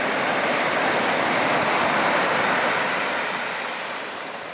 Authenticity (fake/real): real